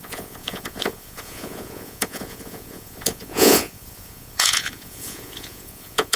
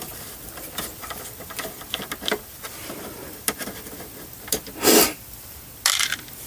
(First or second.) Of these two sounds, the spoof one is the first